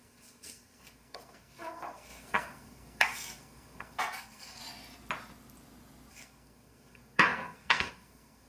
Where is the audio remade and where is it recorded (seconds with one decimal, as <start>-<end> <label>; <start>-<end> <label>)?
0.0-4.6 remade; 4.6-6.1 recorded; 6.1-8.5 remade